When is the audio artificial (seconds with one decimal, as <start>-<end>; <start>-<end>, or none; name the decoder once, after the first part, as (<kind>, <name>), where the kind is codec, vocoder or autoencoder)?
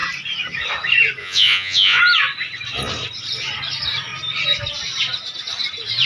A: 1.2-2.0 (vocoder, Vocos)